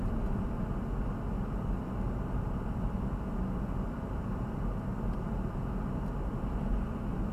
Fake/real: real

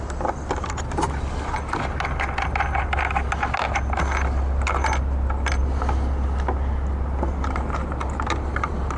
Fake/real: real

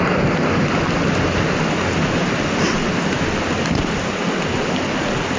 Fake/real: real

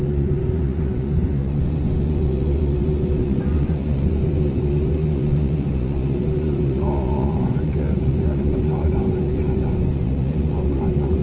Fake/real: fake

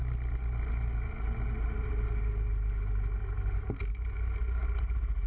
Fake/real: real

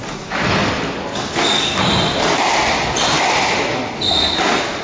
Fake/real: real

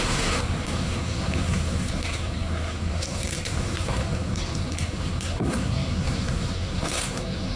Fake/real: fake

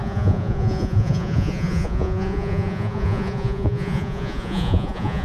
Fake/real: fake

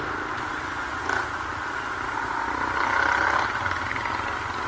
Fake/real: real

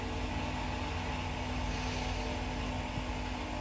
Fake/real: real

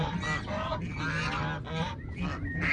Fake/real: real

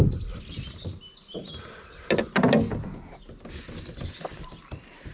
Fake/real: real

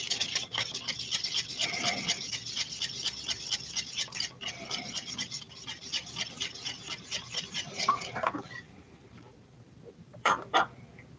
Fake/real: fake